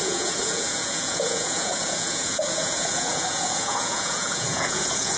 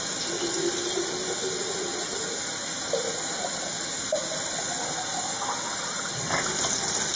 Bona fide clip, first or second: second